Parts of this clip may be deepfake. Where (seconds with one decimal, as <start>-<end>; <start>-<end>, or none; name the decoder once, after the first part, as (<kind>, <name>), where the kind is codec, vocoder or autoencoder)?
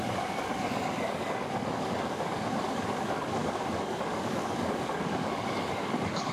0.0-6.3 (codec, DAC)